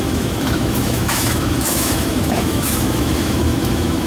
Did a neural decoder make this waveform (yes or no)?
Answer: yes